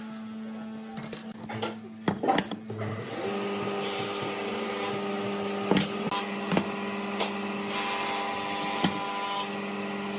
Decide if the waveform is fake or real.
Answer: real